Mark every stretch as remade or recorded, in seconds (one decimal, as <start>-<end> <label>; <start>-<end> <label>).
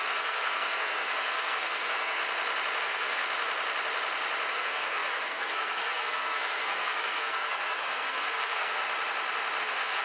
0.0-2.2 remade; 2.2-2.8 recorded; 2.8-3.2 remade; 3.2-4.5 recorded; 4.5-8.8 remade; 8.8-9.6 recorded; 9.6-10.0 remade